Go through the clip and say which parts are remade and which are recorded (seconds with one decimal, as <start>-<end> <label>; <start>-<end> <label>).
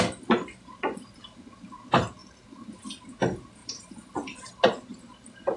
0.0-2.2 recorded; 2.2-2.8 remade; 2.8-3.6 recorded; 3.6-4.5 remade; 4.5-4.9 recorded; 4.9-5.6 remade